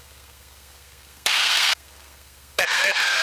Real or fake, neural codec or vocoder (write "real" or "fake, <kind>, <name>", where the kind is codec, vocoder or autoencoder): fake, codec, SNAC